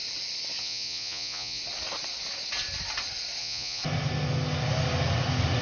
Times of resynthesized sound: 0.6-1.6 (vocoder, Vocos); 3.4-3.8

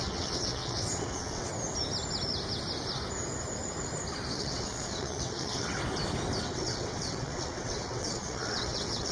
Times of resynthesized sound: 0.0-1.5 (vocoder, WaveNeXt); 4.3-5.8; 6.4-9.1

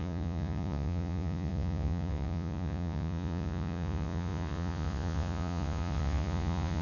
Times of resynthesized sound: 0.0-6.8 (vocoder, Vocos)

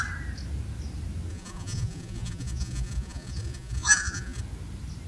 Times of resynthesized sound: 1.3-4.4 (vocoder, Vocos)

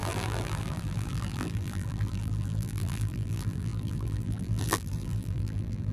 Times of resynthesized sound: 0.0-5.9 (vocoder, BigVGAN v2)

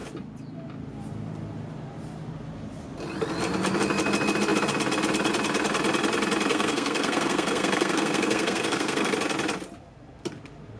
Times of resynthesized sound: 6.5-9.1 (codec, SNAC)

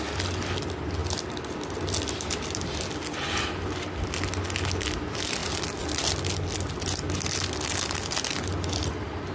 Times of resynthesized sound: none

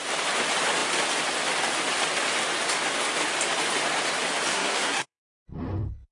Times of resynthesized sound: 4.5-5.2 (codec, SNAC)